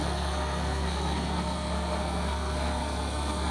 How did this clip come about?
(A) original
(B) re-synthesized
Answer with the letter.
B